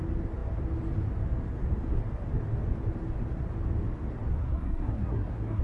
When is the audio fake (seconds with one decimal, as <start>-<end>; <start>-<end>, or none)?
4.4-5.6